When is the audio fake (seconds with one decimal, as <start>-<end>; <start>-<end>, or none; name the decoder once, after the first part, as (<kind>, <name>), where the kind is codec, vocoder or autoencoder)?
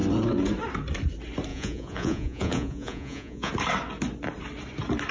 1.5-3.5 (vocoder, Vocos)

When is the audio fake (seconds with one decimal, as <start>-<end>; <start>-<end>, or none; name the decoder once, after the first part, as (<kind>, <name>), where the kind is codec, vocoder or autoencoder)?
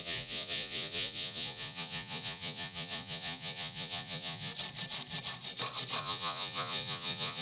0.0-4.5 (vocoder, Vocos); 6.0-7.4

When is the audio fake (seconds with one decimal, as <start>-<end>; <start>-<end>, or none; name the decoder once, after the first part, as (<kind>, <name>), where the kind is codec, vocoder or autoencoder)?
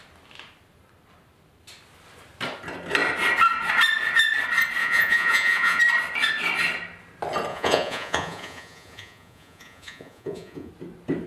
4.8-5.8 (vocoder, Vocos); 7.5-10.7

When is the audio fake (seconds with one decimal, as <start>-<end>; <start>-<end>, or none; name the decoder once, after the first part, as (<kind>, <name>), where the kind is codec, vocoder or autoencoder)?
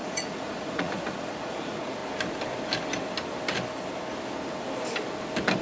0.0-2.0 (vocoder, Vocos)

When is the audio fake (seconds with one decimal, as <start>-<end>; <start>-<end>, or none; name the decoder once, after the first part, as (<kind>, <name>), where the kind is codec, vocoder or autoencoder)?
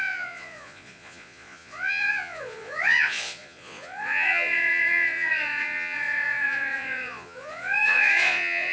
0.0-8.7 (vocoder, Vocos)